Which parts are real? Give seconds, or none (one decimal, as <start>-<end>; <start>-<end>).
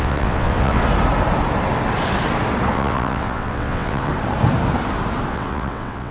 0.8-2.7; 4.1-5.3